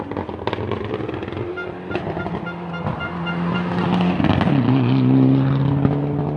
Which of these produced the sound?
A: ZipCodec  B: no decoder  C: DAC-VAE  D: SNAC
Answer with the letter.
B